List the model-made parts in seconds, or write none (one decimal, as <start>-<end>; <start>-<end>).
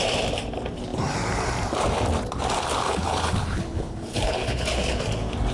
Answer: 2.7-5.0